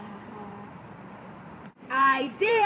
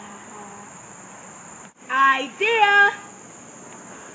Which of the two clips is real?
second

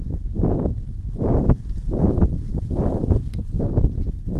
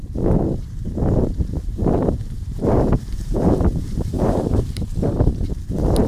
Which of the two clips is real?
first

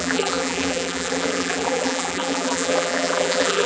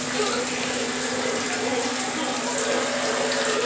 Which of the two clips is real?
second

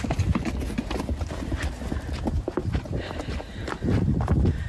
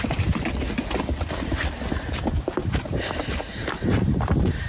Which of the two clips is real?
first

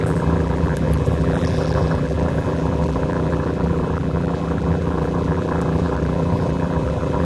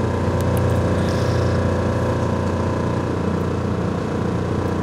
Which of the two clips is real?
second